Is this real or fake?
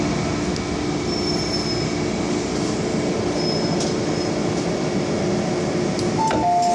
real